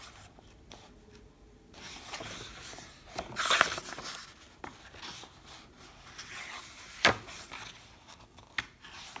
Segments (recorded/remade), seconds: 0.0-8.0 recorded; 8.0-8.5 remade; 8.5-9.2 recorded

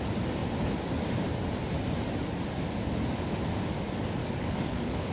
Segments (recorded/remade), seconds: 0.0-4.2 recorded; 4.2-5.1 remade

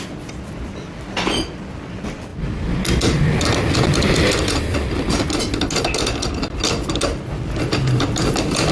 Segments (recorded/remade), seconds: 0.0-8.7 recorded

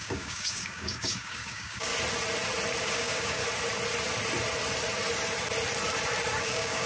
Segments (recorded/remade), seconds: 0.0-1.9 remade; 1.9-2.8 recorded; 2.8-3.4 remade; 3.4-6.4 recorded; 6.4-6.9 remade

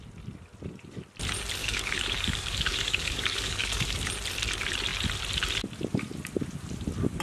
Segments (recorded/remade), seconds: 0.0-1.6 recorded; 1.6-4.1 remade; 4.1-7.2 recorded

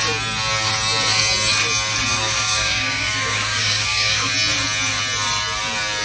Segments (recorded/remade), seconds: 0.0-2.1 recorded; 2.1-4.3 remade; 4.3-6.0 recorded

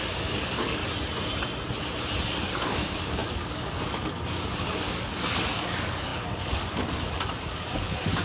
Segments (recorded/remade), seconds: 0.0-0.8 remade; 0.8-2.4 recorded; 2.4-8.2 remade

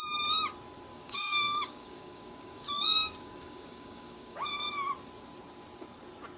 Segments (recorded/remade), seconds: 0.0-0.9 recorded; 0.9-4.7 remade; 4.7-6.4 recorded